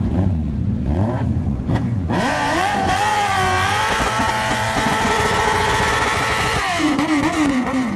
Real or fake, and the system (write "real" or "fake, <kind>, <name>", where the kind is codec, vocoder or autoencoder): fake, vocoder, Vocos